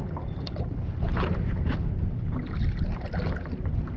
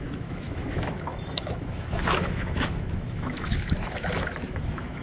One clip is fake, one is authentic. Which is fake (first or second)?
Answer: second